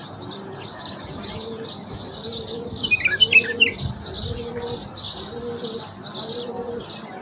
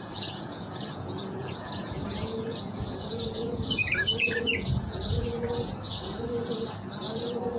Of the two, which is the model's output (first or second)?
second